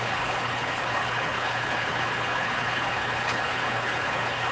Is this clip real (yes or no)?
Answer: no